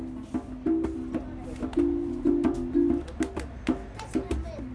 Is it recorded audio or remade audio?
recorded